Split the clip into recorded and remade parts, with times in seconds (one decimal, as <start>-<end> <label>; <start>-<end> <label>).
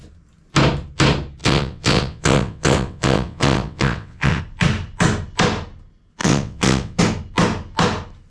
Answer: 0.0-1.4 recorded; 1.4-4.4 remade; 4.4-6.2 recorded; 6.2-7.0 remade; 7.0-8.3 recorded